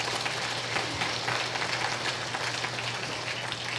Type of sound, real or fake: real